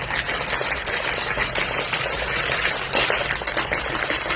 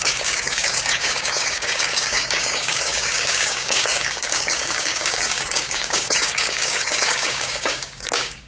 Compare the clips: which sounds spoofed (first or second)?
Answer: second